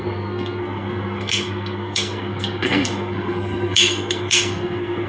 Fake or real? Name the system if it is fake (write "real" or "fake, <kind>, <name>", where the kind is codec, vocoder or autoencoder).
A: fake, codec, SNAC